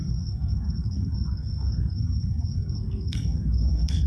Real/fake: fake